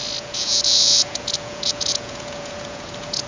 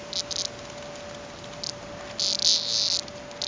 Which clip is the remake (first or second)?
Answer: first